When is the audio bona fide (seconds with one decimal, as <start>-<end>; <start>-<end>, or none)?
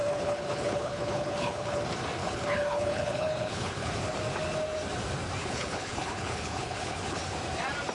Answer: 1.8-2.2; 3.9-5.4; 7.2-7.9